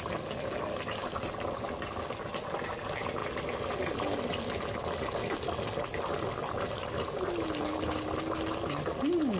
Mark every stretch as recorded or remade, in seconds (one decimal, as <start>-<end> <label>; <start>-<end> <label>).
0.0-9.4 recorded